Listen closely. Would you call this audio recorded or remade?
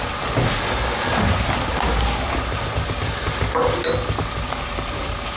recorded